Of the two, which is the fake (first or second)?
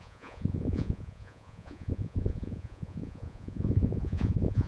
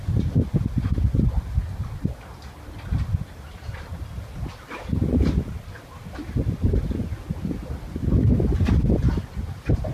first